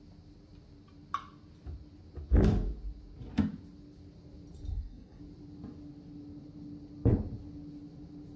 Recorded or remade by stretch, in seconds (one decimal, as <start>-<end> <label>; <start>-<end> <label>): 0.0-4.7 recorded; 4.7-5.2 remade; 5.2-8.4 recorded